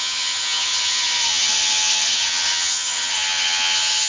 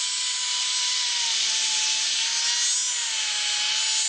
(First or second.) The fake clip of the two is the first